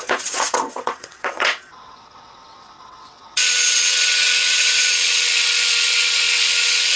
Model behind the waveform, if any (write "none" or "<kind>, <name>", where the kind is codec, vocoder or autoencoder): vocoder, WaveNeXt